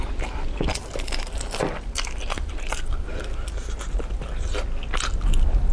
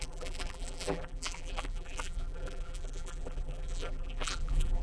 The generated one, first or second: second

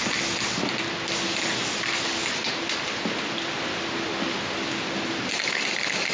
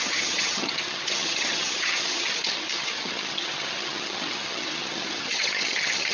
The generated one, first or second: second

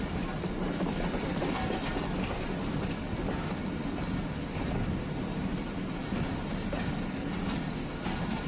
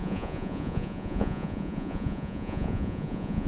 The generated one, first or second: second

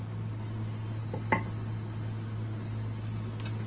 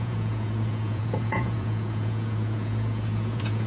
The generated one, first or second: second